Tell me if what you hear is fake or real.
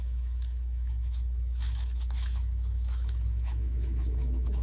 fake